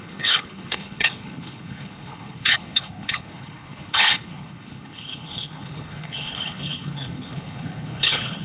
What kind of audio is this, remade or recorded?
remade